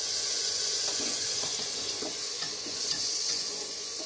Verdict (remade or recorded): remade